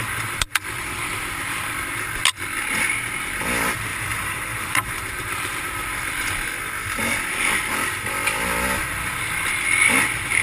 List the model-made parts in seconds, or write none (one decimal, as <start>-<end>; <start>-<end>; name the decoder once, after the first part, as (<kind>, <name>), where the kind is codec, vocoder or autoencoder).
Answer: 3.9-5.6 (vocoder, BigVGAN v2)